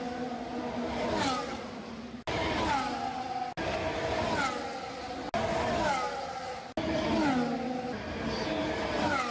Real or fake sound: real